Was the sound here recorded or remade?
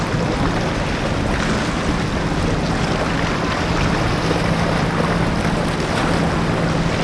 recorded